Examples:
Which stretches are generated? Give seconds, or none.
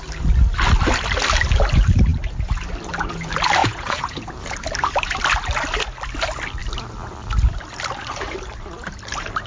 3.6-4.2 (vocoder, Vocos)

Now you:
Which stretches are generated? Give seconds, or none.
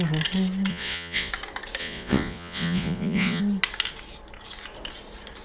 0.7-1.3 (vocoder, Vocos); 1.8-3.4